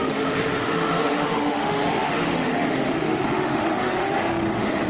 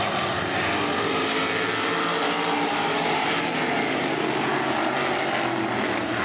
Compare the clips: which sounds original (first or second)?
second